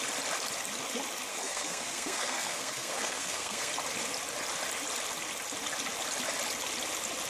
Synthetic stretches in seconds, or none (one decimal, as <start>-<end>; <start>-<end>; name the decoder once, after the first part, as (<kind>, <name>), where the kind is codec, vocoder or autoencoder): 1.3-3.7 (codec, SNAC)